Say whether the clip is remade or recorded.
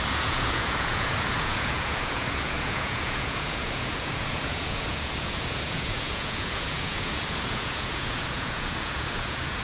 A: remade